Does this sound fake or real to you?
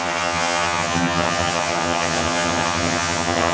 fake